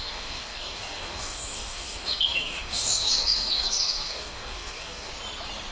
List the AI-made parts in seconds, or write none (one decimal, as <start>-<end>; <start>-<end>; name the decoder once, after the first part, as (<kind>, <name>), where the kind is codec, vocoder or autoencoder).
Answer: 0.0-5.1 (codec, DAC)